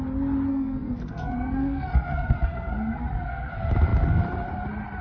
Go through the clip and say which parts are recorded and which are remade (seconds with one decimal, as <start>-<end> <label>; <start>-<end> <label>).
0.0-0.5 recorded; 0.5-3.5 remade; 3.5-5.0 recorded